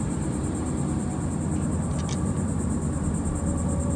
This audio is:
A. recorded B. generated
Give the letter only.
A